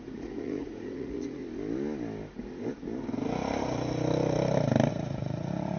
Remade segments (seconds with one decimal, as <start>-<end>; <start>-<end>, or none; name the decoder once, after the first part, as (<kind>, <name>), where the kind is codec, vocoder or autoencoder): 0.0-1.4 (vocoder, Vocos); 4.9-5.8